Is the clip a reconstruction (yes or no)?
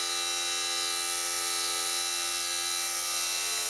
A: no